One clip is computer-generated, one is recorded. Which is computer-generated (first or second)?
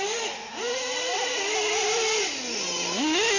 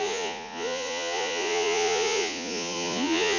second